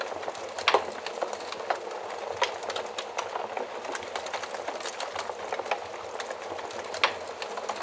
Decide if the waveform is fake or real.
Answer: real